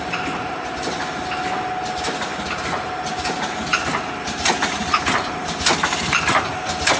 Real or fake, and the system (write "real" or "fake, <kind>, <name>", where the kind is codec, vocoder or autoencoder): real